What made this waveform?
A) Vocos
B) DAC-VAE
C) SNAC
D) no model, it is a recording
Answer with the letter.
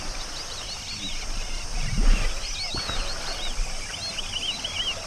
D